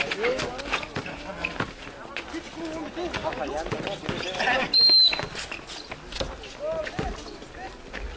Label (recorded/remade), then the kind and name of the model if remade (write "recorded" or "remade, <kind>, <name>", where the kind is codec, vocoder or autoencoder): recorded